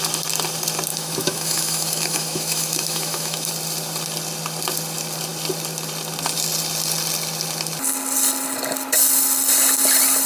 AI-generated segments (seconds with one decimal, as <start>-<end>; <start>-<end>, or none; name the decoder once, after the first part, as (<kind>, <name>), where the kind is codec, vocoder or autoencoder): 0.9-3.5 (autoencoder, DAC-VAE)